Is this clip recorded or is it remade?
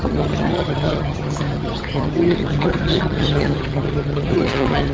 remade